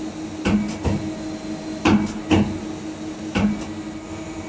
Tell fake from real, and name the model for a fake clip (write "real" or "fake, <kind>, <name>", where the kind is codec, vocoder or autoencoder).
real